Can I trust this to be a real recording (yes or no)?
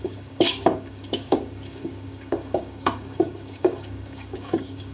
no